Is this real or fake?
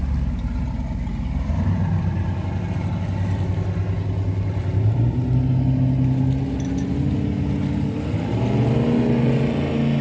real